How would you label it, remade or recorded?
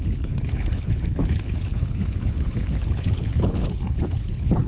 remade